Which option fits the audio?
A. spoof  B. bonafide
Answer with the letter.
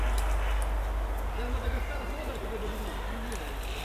B